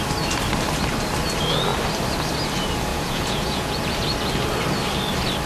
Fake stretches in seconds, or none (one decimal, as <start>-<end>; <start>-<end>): 2.9-3.7